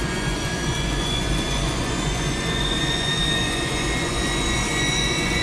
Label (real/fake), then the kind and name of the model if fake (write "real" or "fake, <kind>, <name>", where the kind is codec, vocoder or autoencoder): fake, vocoder, Vocos